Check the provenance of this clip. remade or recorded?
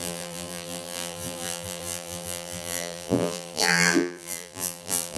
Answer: remade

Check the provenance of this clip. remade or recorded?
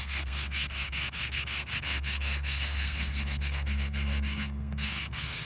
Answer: remade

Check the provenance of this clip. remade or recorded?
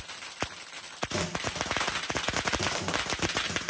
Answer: recorded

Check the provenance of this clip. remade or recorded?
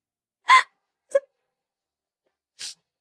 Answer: recorded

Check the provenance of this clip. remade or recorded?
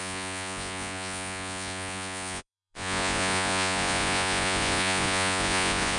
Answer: remade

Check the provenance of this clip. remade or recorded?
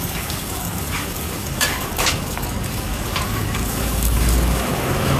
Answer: remade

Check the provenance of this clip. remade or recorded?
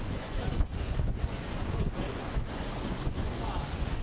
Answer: remade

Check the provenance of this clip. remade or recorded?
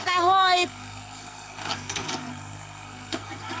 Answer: remade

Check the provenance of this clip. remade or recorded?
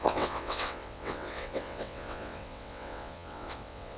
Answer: remade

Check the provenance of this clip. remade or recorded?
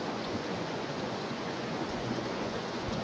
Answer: remade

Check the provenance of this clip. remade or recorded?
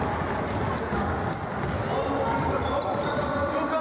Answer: recorded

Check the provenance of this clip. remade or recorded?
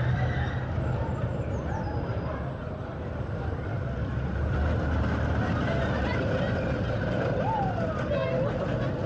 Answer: recorded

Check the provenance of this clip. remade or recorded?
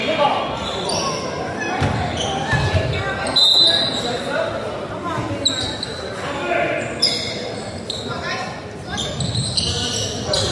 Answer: recorded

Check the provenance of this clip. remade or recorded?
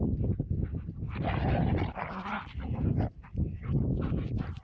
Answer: recorded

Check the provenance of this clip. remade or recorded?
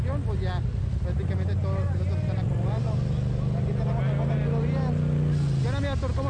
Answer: recorded